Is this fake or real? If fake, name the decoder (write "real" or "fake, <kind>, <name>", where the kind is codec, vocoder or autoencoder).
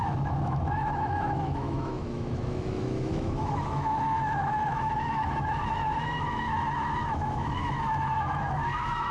fake, autoencoder, DAC-VAE